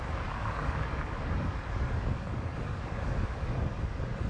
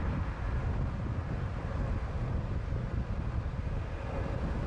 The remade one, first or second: first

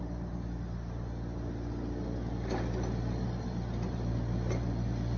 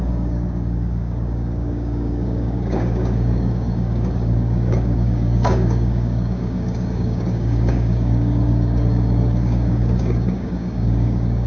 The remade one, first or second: second